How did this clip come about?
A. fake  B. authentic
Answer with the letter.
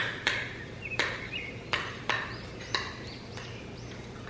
B